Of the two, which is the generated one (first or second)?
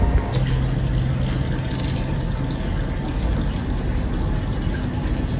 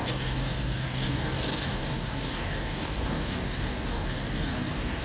second